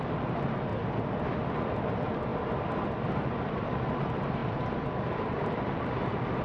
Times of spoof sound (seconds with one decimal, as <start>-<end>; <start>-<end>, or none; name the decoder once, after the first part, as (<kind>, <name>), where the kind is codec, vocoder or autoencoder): 0.0-0.7 (vocoder, BigVGAN v2); 1.5-2.3; 3.2-6.4